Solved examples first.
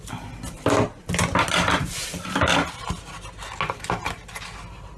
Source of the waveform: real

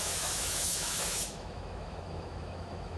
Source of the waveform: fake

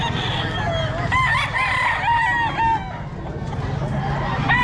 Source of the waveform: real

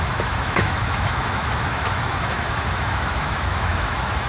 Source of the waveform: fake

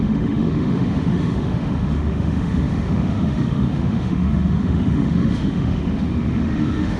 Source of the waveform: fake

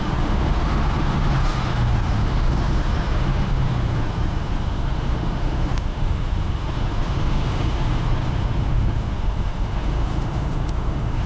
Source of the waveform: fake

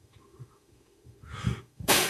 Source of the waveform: fake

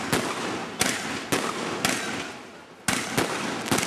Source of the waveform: real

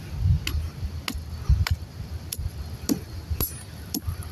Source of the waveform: real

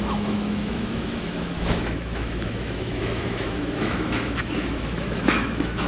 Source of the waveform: fake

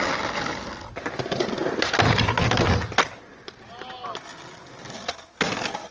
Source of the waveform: real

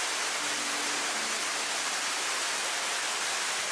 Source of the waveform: real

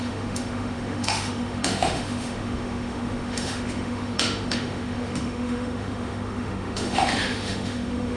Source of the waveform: fake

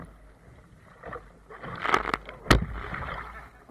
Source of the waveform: real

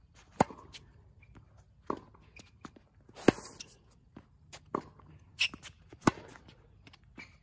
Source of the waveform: real